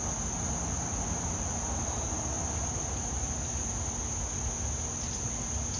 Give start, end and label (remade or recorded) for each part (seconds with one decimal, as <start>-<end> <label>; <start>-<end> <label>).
0.0-5.8 recorded